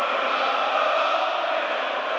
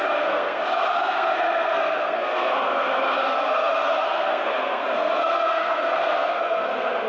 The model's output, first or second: second